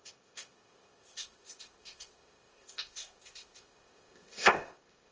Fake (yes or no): yes